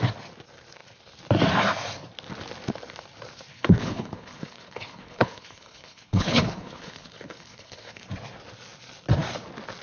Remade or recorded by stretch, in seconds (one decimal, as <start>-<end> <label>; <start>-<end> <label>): 0.0-3.5 recorded; 3.5-8.1 remade; 8.1-9.8 recorded